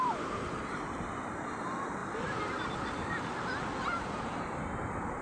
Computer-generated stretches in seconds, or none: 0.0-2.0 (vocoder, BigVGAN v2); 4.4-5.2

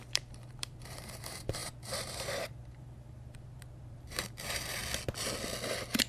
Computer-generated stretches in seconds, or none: 0.0-4.8 (vocoder, BigVGAN v2)

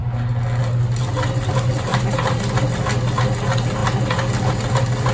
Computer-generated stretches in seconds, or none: 1.9-2.4 (vocoder, BigVGAN v2)

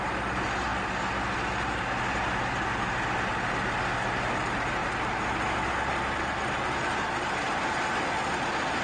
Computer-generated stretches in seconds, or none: none

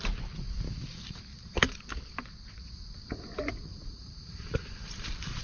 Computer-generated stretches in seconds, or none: 1.3-1.8 (vocoder, BigVGAN v2); 3.7-5.4